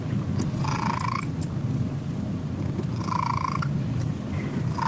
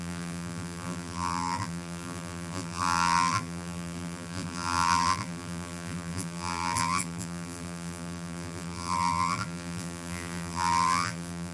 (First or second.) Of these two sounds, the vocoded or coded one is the second